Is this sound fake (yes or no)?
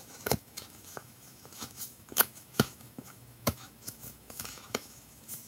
yes